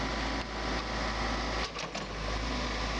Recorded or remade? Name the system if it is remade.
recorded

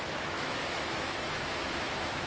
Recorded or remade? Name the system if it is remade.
remade, autoencoder, DAC-VAE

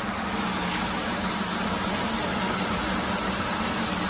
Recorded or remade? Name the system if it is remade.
recorded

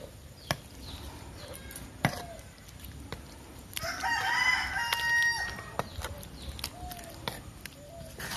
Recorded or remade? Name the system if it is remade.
recorded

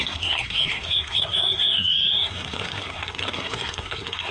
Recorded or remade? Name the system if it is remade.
remade, codec, SNAC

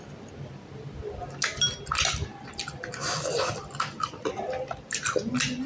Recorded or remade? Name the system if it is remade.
recorded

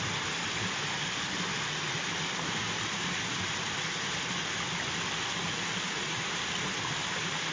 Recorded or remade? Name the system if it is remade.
recorded